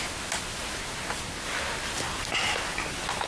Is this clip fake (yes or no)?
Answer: no